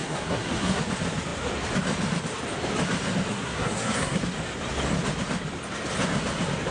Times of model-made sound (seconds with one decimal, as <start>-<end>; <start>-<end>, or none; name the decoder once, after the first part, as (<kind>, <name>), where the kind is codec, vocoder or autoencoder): 0.0-0.8 (codec, SNAC); 3.3-4.2